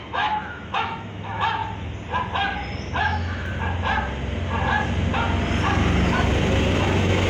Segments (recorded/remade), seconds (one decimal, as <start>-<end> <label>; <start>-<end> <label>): 0.0-1.6 remade; 1.6-3.0 recorded; 3.0-3.5 remade; 3.5-6.7 recorded; 6.7-7.3 remade